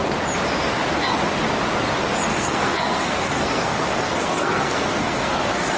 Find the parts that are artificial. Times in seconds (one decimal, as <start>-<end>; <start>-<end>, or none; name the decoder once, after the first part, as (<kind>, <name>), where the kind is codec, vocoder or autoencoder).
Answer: 2.3-5.8 (codec, SNAC)